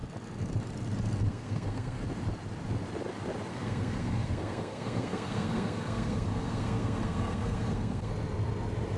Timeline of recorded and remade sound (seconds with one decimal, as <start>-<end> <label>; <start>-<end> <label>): 0.0-1.3 recorded; 1.3-2.0 remade; 2.0-3.5 recorded; 3.5-8.1 remade; 8.1-9.0 recorded